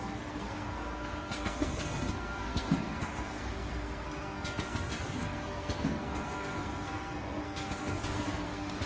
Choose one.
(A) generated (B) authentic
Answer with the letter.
A